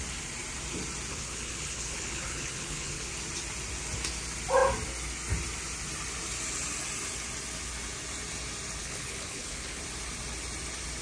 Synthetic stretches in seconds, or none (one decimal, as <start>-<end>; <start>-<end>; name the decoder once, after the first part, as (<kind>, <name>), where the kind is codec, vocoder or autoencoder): 1.1-3.1 (codec, HILCodec); 8.8-9.8